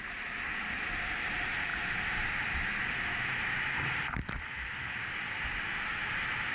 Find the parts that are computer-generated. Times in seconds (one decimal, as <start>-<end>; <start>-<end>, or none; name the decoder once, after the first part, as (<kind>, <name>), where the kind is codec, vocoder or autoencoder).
none